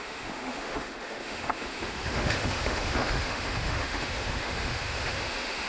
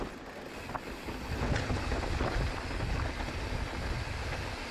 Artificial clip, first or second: first